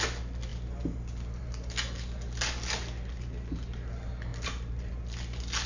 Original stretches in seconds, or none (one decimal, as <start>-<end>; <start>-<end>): 0.0-4.3; 4.9-5.7